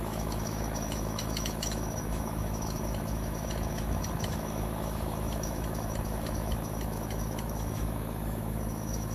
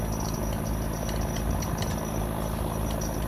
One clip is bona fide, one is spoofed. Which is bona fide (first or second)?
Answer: second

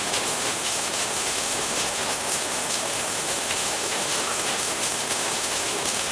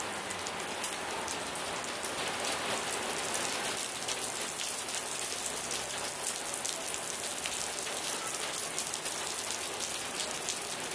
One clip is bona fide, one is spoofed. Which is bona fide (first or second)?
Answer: second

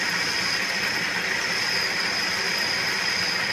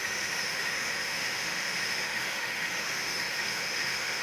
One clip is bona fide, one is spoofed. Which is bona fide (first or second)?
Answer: first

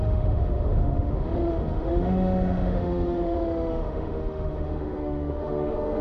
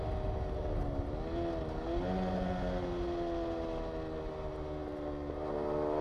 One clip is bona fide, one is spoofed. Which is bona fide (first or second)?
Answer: second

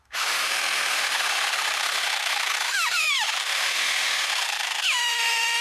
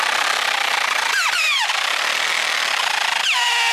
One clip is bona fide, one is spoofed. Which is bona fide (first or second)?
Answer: second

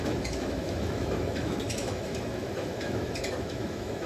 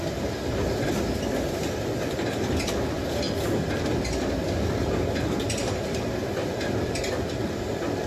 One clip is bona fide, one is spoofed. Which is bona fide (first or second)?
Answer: second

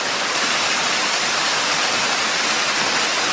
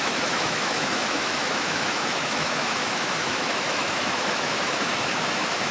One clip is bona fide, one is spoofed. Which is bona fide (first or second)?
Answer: first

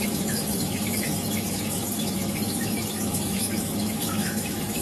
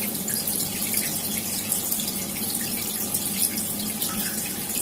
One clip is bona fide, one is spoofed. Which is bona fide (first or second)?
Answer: second